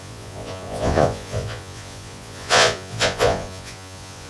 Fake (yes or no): yes